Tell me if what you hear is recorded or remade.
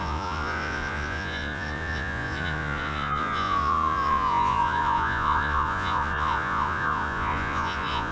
remade